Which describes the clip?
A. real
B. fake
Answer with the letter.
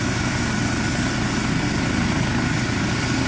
A